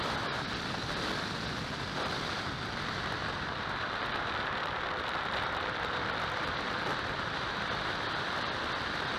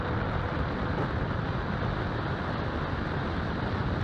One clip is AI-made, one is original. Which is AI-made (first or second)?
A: first